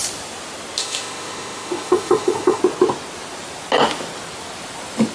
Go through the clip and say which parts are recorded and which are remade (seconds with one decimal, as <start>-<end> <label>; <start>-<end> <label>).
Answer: 0.0-0.8 recorded; 0.8-2.6 remade; 2.6-5.1 recorded